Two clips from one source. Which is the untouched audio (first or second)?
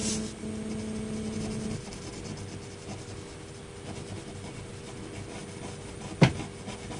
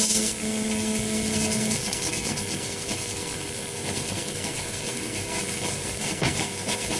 first